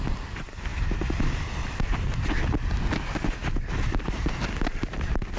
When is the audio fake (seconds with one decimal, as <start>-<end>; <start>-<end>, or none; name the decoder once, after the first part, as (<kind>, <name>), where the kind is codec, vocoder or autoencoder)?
none